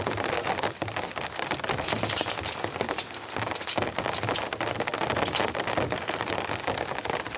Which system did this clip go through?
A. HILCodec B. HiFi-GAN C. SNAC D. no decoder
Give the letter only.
D